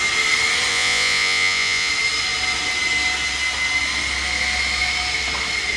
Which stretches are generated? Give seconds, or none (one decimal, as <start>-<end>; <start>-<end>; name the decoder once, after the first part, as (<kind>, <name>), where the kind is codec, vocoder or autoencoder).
0.7-1.9 (vocoder, Vocos)